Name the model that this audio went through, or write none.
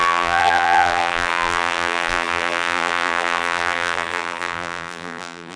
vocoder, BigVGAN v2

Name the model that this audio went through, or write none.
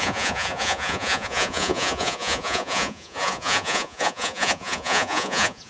vocoder, Vocos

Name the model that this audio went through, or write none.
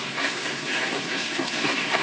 codec, SNAC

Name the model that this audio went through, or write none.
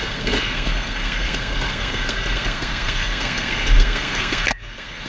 codec, SNAC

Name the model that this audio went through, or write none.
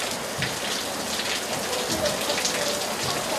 none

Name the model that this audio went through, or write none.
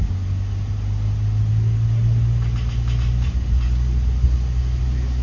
none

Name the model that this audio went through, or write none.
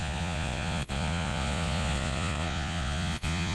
vocoder, Vocos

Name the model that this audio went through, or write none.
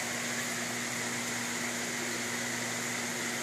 none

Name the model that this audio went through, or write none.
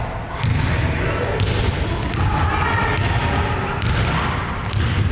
none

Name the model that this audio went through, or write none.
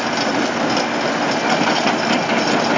none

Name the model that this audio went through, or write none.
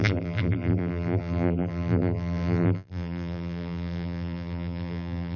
vocoder, BigVGAN v2